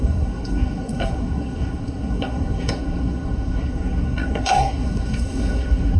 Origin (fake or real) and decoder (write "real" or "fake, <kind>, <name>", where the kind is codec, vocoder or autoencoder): fake, codec, SNAC